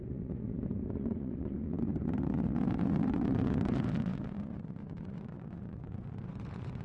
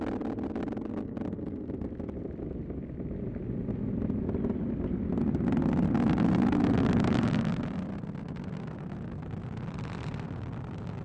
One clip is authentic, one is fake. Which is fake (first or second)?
first